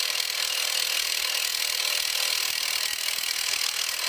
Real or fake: real